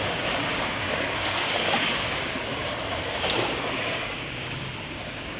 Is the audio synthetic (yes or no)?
yes